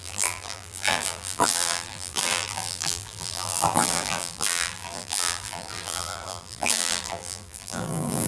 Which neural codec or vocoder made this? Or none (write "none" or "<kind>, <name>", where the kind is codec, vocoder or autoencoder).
vocoder, BigVGAN v2